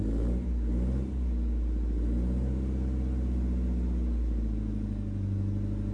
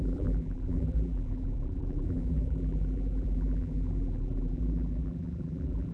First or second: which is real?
first